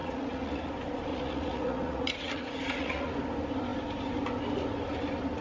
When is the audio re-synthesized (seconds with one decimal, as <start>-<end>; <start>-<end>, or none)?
0.0-0.7; 1.1-3.1